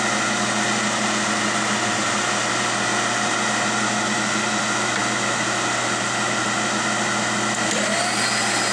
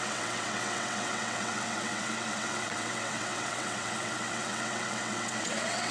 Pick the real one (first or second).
first